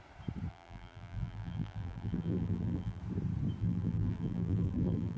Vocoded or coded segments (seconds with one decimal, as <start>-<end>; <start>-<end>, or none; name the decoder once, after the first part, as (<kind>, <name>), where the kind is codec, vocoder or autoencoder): 0.5-3.0 (vocoder, BigVGAN v2); 3.6-5.2